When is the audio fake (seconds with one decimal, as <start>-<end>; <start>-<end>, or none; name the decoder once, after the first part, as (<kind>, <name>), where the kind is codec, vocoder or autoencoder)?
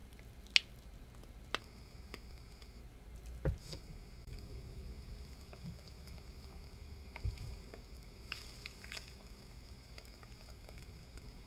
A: 1.6-2.8 (codec, DAC); 3.6-11.5